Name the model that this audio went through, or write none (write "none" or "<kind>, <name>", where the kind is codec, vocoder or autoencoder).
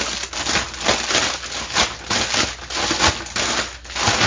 none